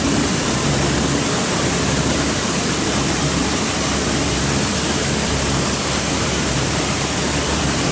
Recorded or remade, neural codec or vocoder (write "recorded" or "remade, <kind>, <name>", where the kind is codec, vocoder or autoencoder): remade, vocoder, BigVGAN v2